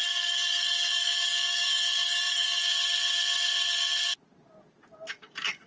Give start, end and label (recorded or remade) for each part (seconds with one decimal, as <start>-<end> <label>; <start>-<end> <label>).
0.0-2.6 remade; 2.6-5.1 recorded; 5.1-5.7 remade